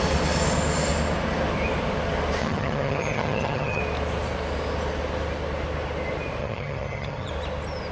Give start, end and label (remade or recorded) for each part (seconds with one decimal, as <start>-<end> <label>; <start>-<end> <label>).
0.0-2.4 recorded; 2.4-3.8 remade; 3.8-6.4 recorded; 6.4-7.3 remade; 7.3-7.9 recorded